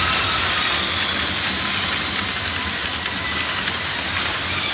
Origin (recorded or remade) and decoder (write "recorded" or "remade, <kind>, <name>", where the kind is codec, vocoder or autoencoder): recorded